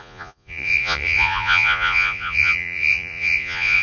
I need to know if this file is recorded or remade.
remade